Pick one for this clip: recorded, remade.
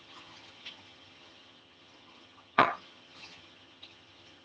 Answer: remade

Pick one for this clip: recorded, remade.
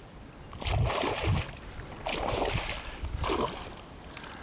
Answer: recorded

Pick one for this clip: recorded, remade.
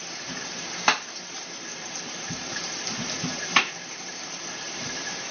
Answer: remade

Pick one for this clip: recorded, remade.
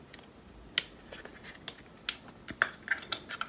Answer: recorded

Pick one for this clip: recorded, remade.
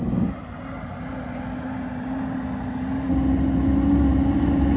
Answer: recorded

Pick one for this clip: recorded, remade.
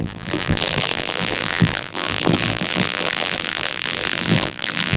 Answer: remade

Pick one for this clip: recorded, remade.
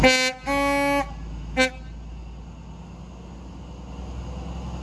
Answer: recorded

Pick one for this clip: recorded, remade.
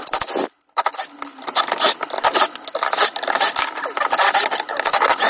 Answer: recorded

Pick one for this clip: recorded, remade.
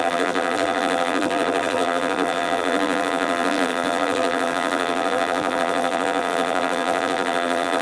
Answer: remade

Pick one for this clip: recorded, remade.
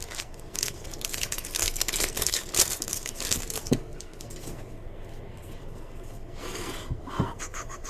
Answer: remade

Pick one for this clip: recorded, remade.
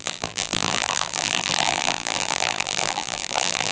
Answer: remade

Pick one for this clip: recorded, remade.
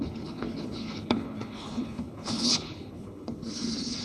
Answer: remade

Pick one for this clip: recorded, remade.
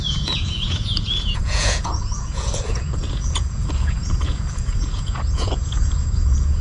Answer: remade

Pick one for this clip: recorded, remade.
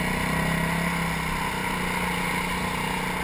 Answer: recorded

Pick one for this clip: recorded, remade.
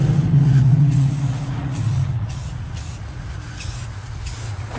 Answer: remade